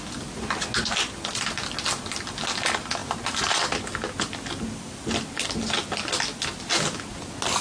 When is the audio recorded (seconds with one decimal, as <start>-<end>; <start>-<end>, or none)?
0.0-7.6